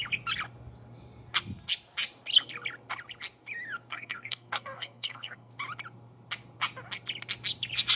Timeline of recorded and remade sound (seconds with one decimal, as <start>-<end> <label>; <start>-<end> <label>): 0.0-3.9 recorded; 3.9-5.5 remade; 5.5-8.0 recorded